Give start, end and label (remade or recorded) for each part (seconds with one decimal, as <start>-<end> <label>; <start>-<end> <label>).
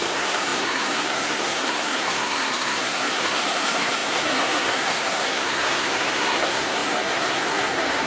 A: 0.0-8.1 remade